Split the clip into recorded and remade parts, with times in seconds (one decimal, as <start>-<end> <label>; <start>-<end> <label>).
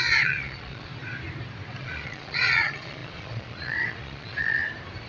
0.0-0.9 remade; 0.9-1.8 recorded; 1.8-4.6 remade; 4.6-5.1 recorded